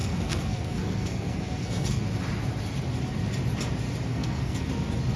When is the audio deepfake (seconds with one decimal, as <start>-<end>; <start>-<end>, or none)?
0.0-2.0; 4.1-4.7